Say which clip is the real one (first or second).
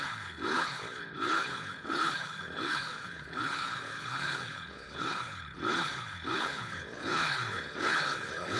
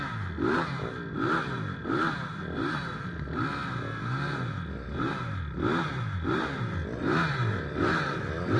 second